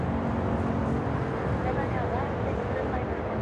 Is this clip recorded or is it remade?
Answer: recorded